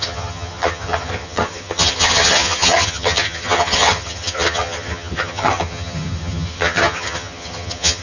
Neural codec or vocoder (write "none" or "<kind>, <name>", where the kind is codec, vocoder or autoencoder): vocoder, HiFi-GAN